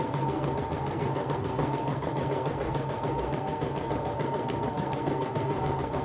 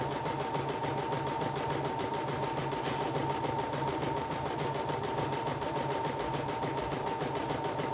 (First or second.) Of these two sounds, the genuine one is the second